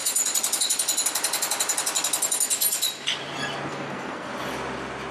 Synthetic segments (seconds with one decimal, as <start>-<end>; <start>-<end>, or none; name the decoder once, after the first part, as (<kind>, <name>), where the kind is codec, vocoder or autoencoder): 3.7-4.3 (codec, SNAC)